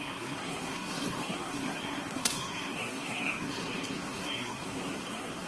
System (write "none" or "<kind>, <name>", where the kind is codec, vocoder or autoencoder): codec, SNAC